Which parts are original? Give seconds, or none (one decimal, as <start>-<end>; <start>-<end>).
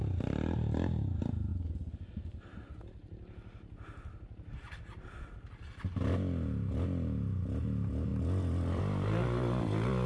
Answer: 0.0-8.1; 8.8-10.1